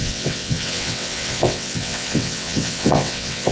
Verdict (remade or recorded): remade